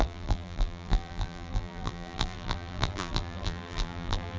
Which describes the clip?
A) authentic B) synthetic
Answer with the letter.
B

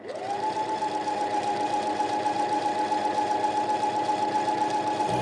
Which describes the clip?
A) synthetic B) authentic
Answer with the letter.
B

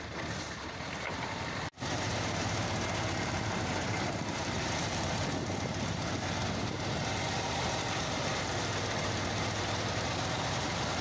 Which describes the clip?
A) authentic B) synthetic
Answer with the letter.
B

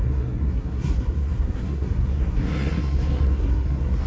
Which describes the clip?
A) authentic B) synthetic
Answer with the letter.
B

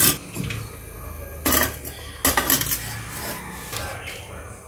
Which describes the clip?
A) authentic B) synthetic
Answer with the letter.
A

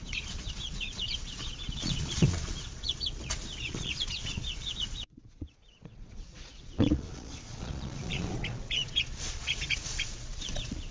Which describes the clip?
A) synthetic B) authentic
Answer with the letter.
A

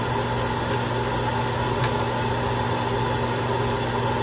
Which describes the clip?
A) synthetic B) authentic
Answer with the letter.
B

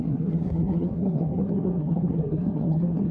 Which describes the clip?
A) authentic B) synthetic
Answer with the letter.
B